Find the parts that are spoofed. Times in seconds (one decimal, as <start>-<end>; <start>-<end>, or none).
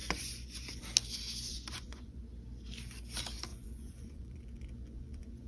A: 0.0-0.8; 1.5-2.2; 3.5-5.5